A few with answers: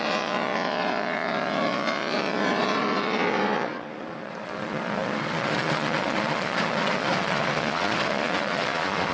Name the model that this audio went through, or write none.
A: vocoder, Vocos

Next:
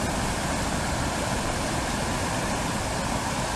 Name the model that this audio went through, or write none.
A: none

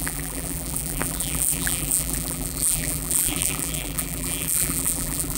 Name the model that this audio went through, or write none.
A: vocoder, BigVGAN v2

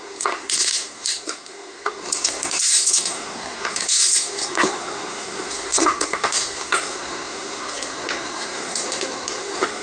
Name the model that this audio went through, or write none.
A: codec, SNAC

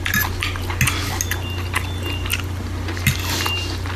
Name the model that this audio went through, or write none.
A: none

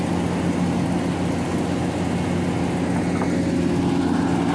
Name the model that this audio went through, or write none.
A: none